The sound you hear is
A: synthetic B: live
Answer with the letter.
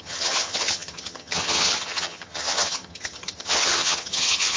A